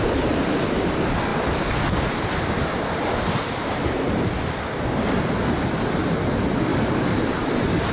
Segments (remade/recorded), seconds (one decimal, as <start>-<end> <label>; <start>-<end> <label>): 0.0-6.7 recorded; 6.7-7.9 remade